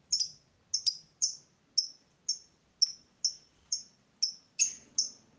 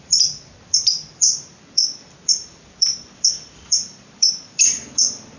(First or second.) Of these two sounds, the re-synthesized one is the second